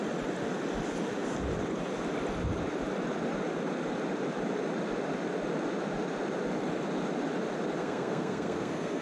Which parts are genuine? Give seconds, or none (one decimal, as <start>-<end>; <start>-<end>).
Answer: 0.0-7.8